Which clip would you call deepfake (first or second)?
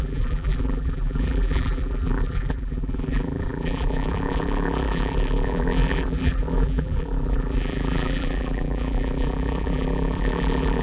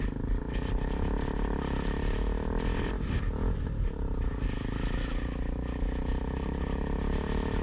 first